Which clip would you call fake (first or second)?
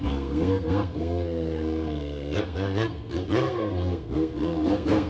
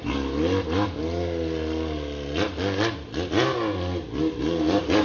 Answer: first